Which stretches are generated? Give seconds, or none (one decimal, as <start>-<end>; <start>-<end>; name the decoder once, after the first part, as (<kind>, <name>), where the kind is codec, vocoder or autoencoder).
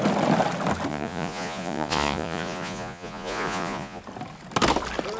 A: 0.9-4.0 (vocoder, Vocos)